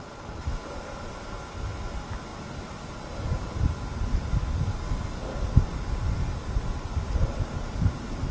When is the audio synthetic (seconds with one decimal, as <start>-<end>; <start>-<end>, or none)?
none